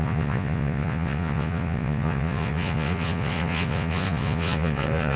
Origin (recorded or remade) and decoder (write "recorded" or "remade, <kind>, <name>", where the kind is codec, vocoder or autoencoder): remade, vocoder, Vocos